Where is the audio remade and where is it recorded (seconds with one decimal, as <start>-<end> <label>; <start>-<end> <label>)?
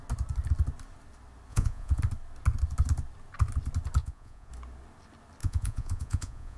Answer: 0.0-1.5 recorded; 1.5-2.0 remade; 2.0-4.0 recorded; 4.0-4.5 remade; 4.5-5.4 recorded; 5.4-6.6 remade